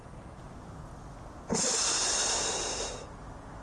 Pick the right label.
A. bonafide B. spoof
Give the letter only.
A